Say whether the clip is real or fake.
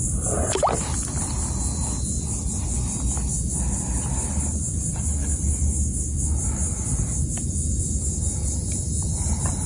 real